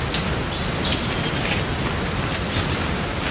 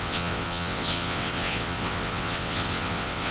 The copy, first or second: second